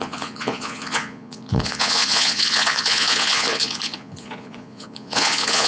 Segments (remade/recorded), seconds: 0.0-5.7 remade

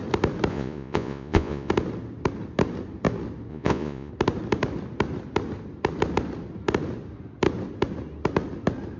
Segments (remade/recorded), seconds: 0.0-0.5 recorded; 0.5-1.7 remade; 1.7-3.5 recorded; 3.5-4.1 remade; 4.1-9.0 recorded

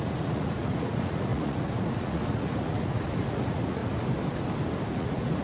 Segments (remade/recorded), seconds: 0.0-3.8 remade; 3.8-4.9 recorded; 4.9-5.4 remade

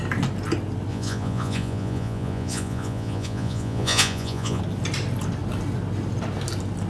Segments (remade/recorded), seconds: 0.0-0.9 recorded; 0.9-4.6 remade; 4.6-6.9 recorded